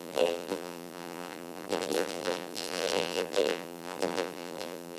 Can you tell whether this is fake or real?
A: fake